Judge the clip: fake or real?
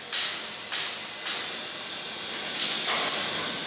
real